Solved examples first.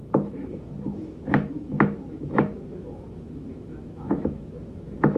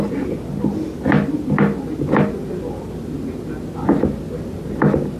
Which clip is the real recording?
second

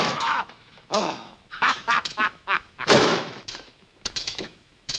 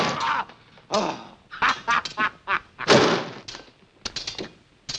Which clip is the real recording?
second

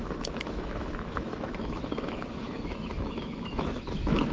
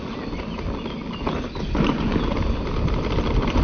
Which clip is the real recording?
second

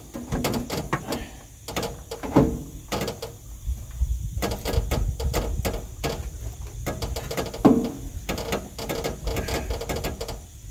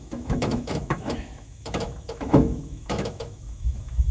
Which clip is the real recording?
first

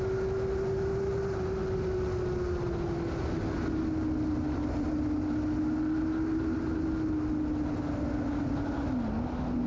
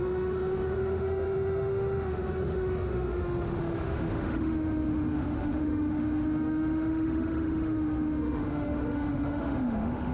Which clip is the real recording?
first